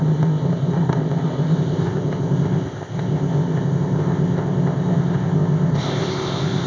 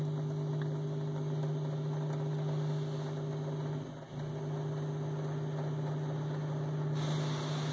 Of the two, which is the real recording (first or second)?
second